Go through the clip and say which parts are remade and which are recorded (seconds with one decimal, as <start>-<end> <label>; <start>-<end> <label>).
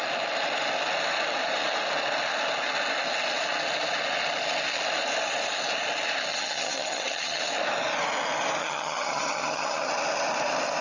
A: 0.0-6.3 recorded; 6.3-7.4 remade; 7.4-8.6 recorded; 8.6-9.9 remade; 9.9-10.8 recorded